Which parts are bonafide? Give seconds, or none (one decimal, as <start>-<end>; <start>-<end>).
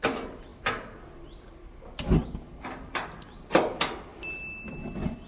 0.0-5.3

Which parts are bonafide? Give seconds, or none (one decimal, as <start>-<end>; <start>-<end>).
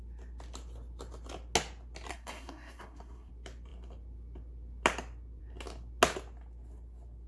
0.0-2.1; 3.3-7.3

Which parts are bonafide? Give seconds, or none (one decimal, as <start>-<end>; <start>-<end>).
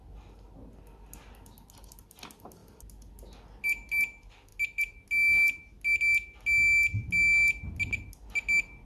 0.0-8.9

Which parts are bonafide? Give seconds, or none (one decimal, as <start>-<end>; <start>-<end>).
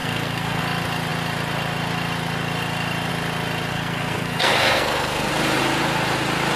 0.6-3.7; 5.3-6.6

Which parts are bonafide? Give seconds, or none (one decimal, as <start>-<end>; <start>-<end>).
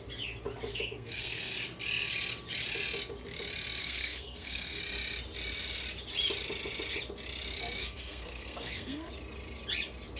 0.0-0.7; 1.5-3.8; 4.8-7.8; 9.1-10.2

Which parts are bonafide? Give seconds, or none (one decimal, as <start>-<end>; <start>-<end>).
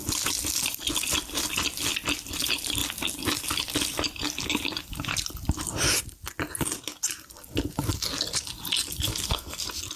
0.0-9.1; 9.6-10.0